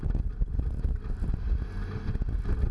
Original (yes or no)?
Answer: yes